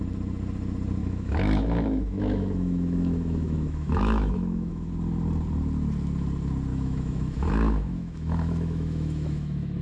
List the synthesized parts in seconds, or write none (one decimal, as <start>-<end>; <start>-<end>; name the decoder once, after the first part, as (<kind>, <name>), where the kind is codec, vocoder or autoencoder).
1.0-4.9 (autoencoder, DAC-VAE); 6.7-9.8